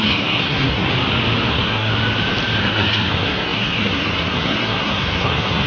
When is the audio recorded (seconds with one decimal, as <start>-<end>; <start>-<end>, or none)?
0.9-1.5; 1.9-2.6